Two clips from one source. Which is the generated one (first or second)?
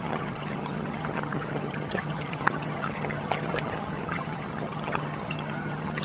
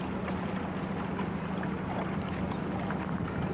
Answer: first